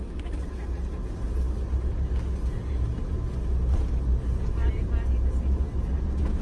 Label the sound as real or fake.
real